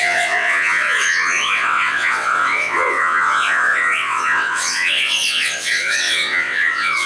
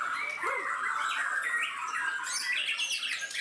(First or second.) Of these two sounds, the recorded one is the second